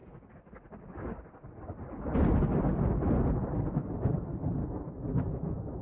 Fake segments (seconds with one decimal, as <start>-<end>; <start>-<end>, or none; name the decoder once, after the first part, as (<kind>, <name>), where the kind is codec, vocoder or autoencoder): 4.6-5.8 (autoencoder, DAC-VAE)